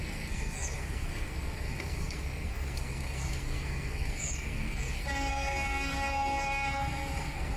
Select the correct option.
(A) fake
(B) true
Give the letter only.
A